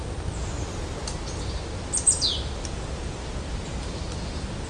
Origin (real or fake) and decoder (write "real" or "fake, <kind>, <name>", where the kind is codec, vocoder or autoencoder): real